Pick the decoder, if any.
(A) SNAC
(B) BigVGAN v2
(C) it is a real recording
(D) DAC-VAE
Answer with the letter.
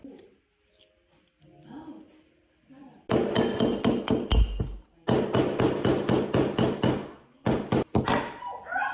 C